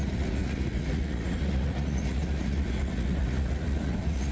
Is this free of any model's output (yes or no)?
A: no